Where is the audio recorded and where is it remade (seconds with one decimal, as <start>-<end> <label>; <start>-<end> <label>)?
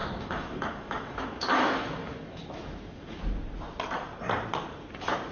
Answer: 0.0-3.2 remade; 3.2-5.3 recorded